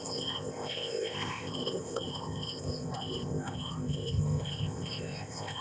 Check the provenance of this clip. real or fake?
fake